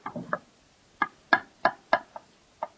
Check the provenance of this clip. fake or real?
real